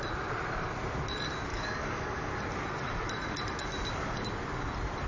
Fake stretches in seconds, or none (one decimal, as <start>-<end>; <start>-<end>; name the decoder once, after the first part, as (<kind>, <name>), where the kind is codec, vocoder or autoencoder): 1.5-2.3 (codec, DAC)